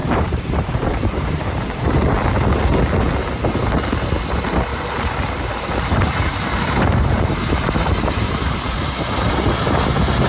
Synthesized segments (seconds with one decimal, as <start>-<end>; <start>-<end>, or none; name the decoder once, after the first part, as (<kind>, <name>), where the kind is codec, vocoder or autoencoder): 0.0-1.8 (vocoder, BigVGAN v2); 4.7-8.9